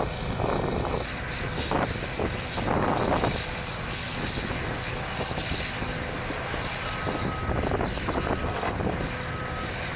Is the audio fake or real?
real